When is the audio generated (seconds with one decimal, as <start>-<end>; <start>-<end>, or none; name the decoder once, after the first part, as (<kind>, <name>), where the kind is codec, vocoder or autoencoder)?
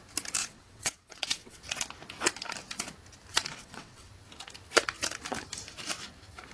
0.4-1.6 (vocoder, WaveNeXt); 3.6-4.1